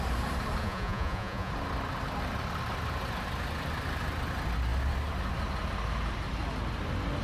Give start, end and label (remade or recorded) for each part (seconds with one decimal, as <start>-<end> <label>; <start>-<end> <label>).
0.0-0.6 recorded; 0.6-1.5 remade; 1.5-7.2 recorded